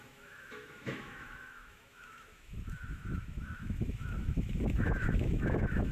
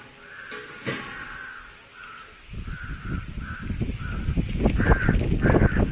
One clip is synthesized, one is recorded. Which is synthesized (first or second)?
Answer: first